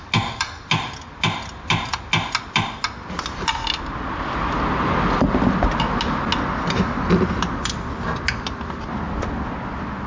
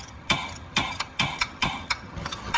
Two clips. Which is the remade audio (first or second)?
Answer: second